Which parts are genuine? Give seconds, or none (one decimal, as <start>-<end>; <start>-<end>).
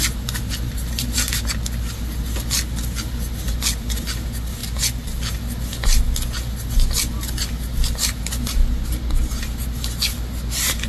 0.0-10.9